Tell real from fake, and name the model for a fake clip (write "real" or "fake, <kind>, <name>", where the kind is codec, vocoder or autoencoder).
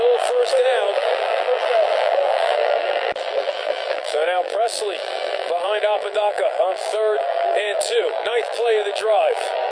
fake, vocoder, BigVGAN v2